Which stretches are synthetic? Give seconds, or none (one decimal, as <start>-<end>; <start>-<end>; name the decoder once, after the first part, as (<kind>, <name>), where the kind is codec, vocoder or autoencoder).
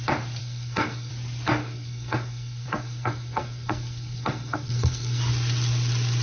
0.4-1.1 (codec, SNAC); 1.6-5.2